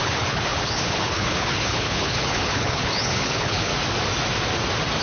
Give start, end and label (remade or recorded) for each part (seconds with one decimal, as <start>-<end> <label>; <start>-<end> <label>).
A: 0.0-3.7 remade; 3.7-5.0 recorded